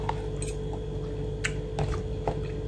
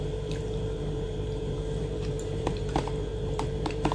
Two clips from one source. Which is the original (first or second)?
first